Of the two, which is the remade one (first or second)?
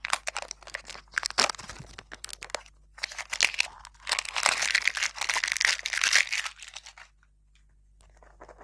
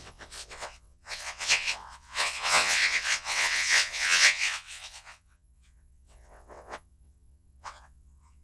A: second